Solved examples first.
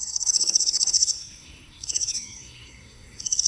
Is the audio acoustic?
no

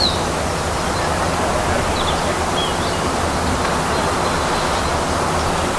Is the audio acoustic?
yes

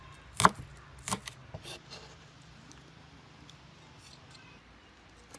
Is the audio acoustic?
yes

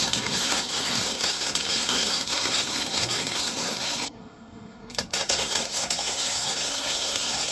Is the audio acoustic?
no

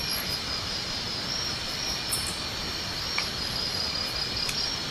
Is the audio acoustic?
yes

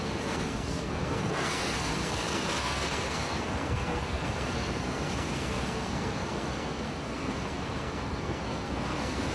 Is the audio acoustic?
no